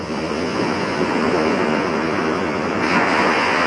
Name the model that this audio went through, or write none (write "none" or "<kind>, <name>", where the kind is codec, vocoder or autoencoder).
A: vocoder, Vocos